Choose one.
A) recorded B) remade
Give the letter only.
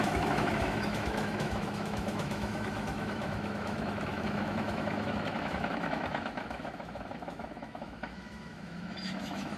B